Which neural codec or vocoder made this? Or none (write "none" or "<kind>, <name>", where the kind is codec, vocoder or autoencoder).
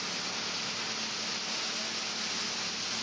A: none